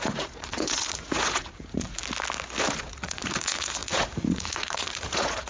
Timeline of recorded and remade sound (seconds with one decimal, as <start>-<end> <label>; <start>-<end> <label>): 0.0-2.0 remade; 2.0-2.8 recorded; 2.8-5.5 remade